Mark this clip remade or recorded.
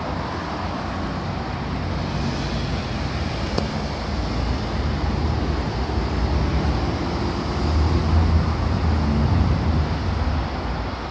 remade